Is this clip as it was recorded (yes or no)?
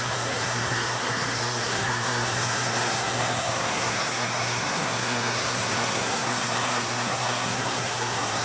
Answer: no